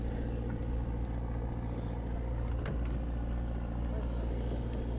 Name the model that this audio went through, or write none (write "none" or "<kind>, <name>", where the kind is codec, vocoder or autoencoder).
none